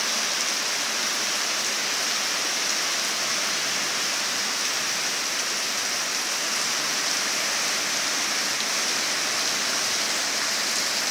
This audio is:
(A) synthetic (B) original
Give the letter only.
B